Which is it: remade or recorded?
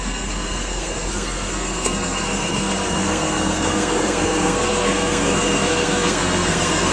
remade